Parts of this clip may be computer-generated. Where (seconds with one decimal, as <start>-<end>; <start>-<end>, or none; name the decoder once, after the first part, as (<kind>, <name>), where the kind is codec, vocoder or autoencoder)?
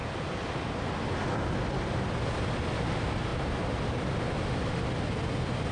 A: none